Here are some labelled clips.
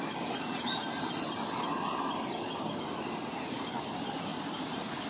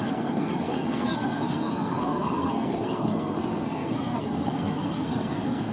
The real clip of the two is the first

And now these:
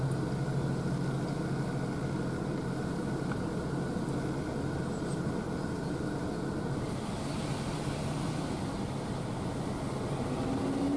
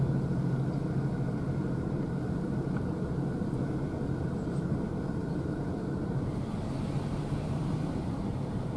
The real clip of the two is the first